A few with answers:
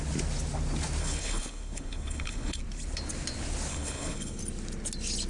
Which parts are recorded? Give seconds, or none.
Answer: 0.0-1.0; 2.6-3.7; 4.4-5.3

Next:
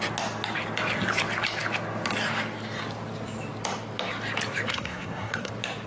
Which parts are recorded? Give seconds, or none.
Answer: 0.0-4.7; 5.5-5.9